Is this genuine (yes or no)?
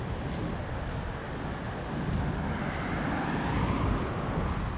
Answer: yes